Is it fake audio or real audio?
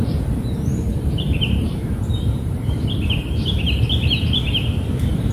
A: fake